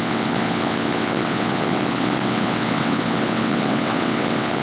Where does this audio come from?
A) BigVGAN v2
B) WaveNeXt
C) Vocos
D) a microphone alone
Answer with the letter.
B